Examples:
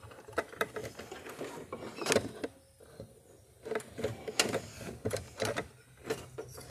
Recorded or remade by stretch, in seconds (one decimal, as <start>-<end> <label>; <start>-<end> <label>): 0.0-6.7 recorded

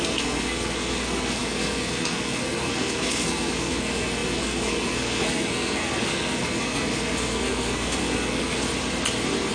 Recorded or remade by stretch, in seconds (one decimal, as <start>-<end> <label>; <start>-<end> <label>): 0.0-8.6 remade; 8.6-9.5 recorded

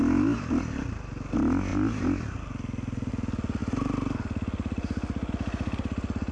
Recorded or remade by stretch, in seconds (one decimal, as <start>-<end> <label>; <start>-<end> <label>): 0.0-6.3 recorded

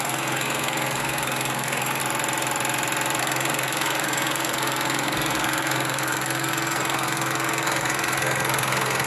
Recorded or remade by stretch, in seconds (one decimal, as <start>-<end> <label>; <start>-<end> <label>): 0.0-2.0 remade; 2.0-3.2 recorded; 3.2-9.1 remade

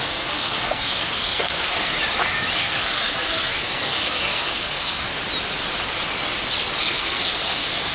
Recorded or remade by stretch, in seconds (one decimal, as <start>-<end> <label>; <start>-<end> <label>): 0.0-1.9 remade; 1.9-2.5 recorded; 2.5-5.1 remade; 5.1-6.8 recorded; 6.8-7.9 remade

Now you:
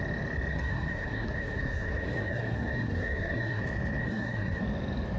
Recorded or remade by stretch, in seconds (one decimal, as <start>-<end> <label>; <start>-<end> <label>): 0.0-0.5 recorded; 0.5-3.6 remade; 3.6-4.0 recorded; 4.0-4.6 remade; 4.6-5.2 recorded

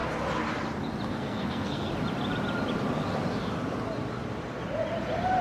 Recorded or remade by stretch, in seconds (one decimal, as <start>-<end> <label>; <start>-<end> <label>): 0.0-1.1 recorded; 1.1-1.9 remade; 1.9-5.4 recorded

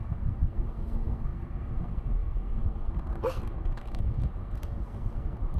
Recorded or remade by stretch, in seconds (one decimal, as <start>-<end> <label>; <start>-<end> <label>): 0.0-5.6 remade